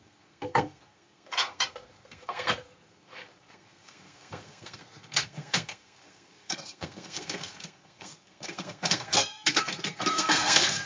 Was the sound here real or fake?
fake